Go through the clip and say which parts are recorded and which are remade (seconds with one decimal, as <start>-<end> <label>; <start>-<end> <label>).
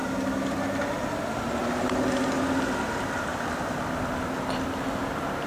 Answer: 0.0-5.5 recorded